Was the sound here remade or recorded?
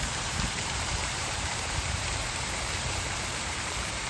remade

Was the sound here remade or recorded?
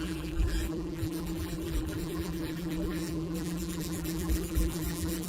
remade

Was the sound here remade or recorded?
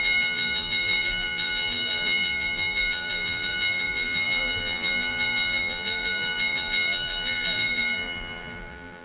remade